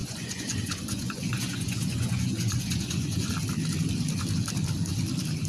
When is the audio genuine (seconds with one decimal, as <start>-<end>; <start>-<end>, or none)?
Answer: 3.3-5.5